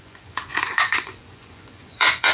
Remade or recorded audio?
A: remade